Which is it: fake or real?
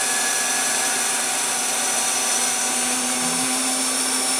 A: fake